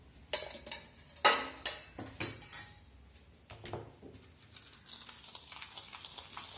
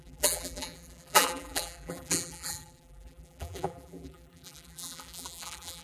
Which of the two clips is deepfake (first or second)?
second